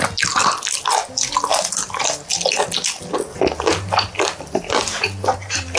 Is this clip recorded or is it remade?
recorded